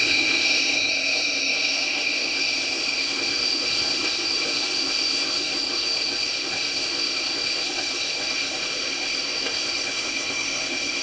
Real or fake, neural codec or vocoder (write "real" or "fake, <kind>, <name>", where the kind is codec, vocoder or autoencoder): fake, codec, ZipCodec